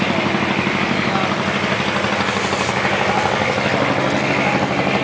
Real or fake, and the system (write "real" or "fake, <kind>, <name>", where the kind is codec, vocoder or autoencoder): real